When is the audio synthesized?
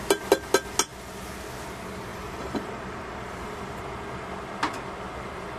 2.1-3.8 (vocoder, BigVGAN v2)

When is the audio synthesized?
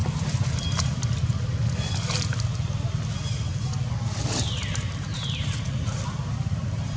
none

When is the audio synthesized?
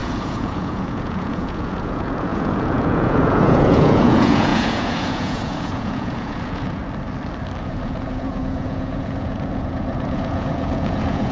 0.0-6.8 (vocoder, Vocos); 7.6-11.3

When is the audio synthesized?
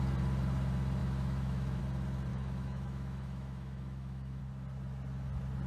1.0-1.8 (autoencoder, DAC-VAE); 2.3-4.4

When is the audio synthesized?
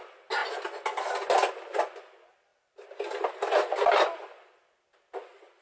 none